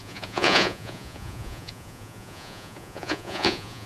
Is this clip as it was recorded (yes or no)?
no